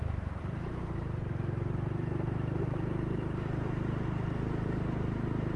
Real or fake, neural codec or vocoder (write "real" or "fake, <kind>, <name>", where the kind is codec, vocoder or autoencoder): fake, vocoder, BigVGAN v2